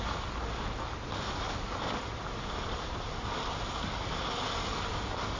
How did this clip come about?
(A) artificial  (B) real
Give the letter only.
B